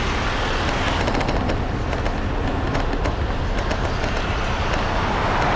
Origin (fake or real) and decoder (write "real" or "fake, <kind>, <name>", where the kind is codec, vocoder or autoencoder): real